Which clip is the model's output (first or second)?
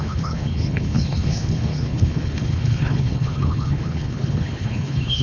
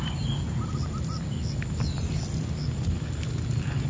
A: first